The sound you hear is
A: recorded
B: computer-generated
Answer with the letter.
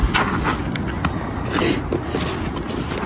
A